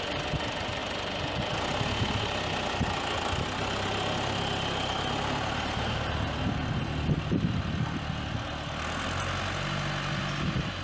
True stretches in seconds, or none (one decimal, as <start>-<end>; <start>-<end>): 0.0-10.8